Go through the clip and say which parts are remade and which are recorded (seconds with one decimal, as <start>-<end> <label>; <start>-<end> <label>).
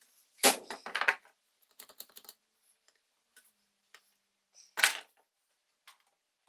0.0-0.4 recorded; 0.4-3.4 remade; 3.4-4.9 recorded; 4.9-5.5 remade; 5.5-6.5 recorded